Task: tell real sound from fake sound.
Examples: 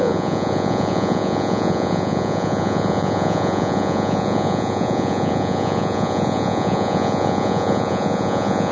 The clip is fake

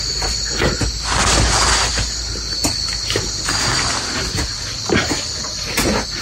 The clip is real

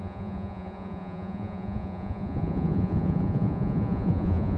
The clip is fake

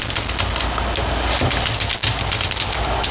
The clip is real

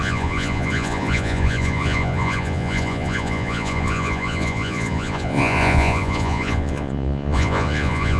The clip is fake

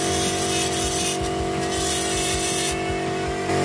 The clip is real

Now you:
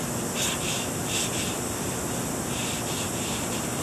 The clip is real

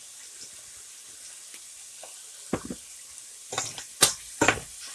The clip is real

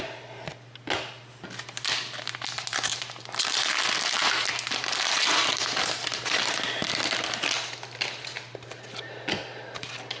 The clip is real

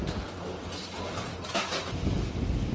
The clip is real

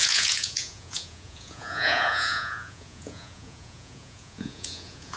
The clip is fake